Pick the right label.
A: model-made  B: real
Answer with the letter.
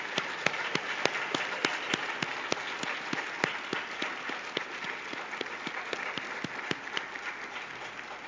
B